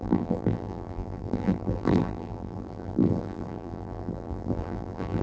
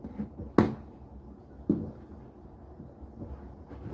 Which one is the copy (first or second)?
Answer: first